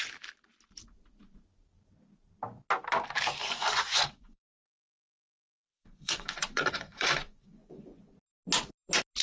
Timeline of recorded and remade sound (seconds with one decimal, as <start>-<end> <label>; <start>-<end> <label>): 0.0-3.4 recorded; 3.4-8.1 remade; 8.1-9.2 recorded